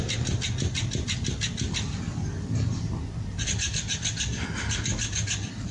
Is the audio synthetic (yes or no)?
no